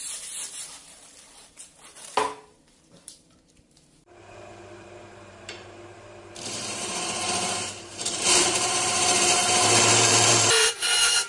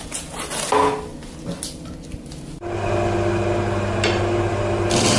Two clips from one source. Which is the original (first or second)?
second